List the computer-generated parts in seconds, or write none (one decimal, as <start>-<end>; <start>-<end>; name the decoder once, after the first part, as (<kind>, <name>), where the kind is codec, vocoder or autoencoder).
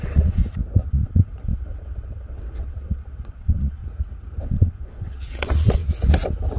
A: 0.0-0.4 (vocoder, WaveNeXt); 0.9-3.8; 4.4-5.8